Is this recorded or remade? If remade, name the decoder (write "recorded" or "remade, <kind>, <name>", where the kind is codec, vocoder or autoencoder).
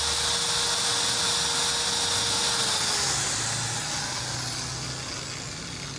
recorded